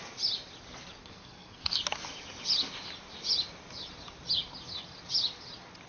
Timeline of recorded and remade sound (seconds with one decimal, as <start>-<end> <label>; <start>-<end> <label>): 0.0-1.0 recorded; 1.0-1.8 remade; 1.8-5.9 recorded